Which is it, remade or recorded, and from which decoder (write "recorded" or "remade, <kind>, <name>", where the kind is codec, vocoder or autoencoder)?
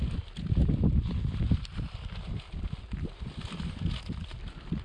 recorded